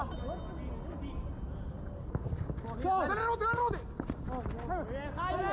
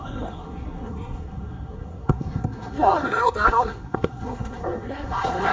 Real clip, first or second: first